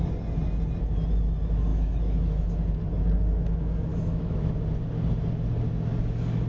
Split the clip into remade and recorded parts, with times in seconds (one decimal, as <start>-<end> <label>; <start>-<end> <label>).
0.0-1.7 recorded; 1.7-2.5 remade; 2.5-3.9 recorded; 3.9-4.5 remade; 4.5-6.5 recorded